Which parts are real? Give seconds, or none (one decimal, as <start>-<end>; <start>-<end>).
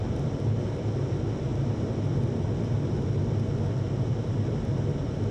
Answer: 0.0-5.3